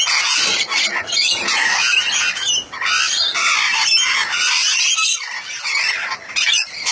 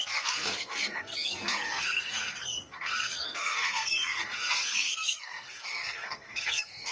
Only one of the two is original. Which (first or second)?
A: first